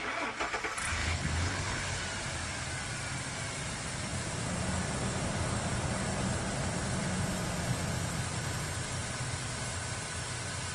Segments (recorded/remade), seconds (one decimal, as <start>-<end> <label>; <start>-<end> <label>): 0.0-1.0 recorded; 1.0-2.0 remade; 2.0-10.7 recorded